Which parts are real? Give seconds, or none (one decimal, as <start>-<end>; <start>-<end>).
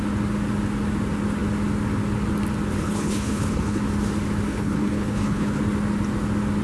0.0-2.8; 3.8-4.5; 5.6-6.6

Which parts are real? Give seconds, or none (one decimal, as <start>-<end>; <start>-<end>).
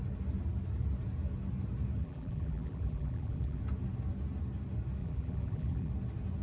0.0-2.0; 3.6-5.0; 5.9-6.4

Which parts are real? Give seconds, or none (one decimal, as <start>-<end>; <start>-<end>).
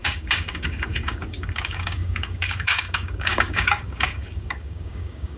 none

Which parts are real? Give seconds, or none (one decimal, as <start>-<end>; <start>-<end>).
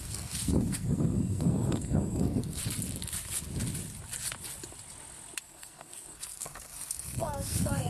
2.6-5.4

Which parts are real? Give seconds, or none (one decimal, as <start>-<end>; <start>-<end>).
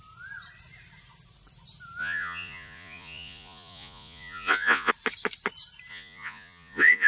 0.0-2.0; 4.9-5.9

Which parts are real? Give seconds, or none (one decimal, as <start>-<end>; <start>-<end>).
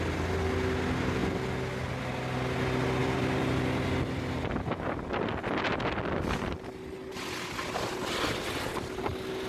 0.0-3.0; 5.3-9.5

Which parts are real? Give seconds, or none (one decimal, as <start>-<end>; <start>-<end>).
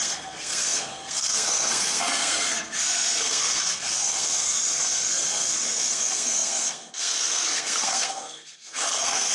none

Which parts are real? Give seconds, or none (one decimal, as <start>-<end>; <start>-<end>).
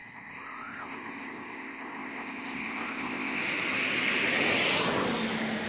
3.4-5.7